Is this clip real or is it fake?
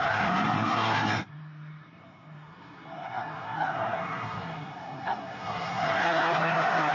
fake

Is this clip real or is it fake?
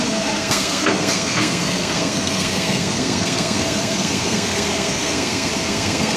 fake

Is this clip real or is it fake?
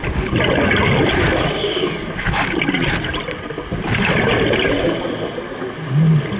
real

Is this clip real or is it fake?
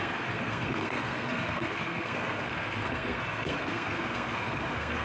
fake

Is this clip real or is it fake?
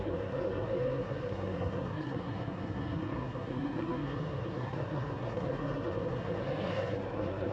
fake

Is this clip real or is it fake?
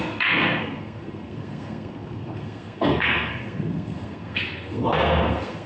fake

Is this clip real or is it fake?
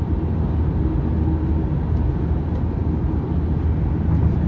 real